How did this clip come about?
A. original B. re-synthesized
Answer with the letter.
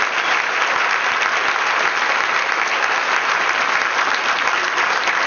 A